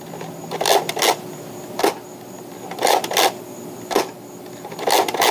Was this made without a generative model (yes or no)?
yes